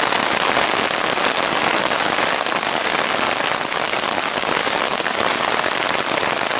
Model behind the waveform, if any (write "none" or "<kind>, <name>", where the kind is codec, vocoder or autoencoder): none